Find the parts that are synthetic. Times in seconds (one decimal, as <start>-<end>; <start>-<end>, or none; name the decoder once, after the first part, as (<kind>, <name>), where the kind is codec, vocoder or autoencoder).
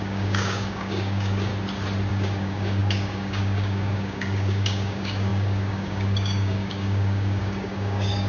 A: 0.0-1.5 (codec, DAC); 2.1-8.3